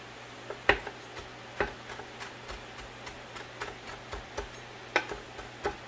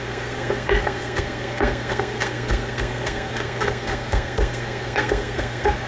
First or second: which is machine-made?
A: second